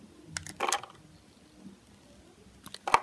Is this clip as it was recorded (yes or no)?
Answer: yes